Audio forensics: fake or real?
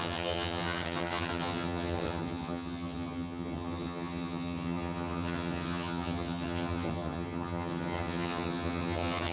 fake